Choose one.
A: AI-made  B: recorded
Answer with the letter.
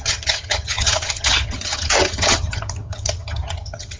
A